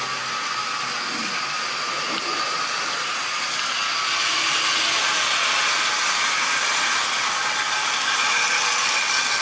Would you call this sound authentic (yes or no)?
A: yes